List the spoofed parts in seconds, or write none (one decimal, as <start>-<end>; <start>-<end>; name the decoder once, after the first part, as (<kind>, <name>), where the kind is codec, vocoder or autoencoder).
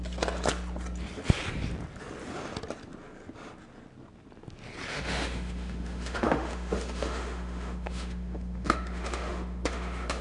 4.9-10.2 (autoencoder, DAC-VAE)